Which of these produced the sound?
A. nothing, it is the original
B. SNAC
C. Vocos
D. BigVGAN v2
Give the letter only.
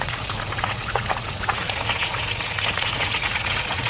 C